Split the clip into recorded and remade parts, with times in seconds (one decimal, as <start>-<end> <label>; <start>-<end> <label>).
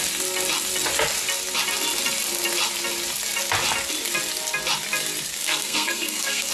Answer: 0.0-5.3 recorded; 5.3-6.5 remade